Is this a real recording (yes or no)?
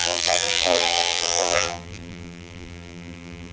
no